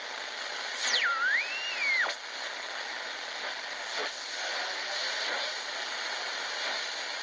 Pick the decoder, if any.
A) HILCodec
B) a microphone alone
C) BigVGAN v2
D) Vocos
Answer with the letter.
B